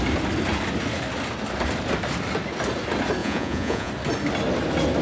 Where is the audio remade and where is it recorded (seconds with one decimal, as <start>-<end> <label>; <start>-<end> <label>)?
0.0-3.2 recorded; 3.2-3.9 remade; 3.9-5.0 recorded

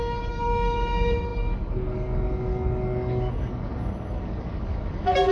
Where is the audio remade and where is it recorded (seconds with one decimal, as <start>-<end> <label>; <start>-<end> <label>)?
0.0-5.3 remade

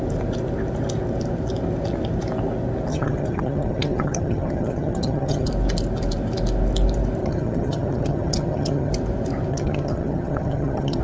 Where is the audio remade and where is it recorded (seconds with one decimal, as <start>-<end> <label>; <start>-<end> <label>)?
0.0-2.9 recorded; 2.9-5.5 remade; 5.5-7.2 recorded; 7.2-8.9 remade; 8.9-9.5 recorded; 9.5-11.0 remade

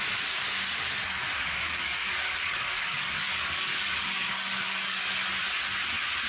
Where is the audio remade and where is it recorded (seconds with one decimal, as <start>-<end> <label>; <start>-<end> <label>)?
0.0-1.2 recorded; 1.2-5.0 remade; 5.0-6.3 recorded

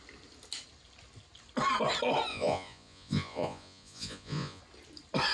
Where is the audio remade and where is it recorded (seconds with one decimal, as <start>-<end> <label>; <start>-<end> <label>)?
0.0-2.3 recorded; 2.3-4.6 remade; 4.6-5.3 recorded

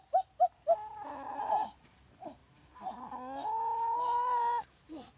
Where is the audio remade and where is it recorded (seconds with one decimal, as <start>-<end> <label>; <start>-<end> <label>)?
0.0-5.2 recorded

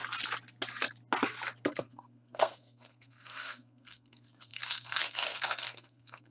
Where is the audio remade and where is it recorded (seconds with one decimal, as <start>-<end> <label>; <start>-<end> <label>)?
0.0-1.7 recorded; 1.7-6.3 remade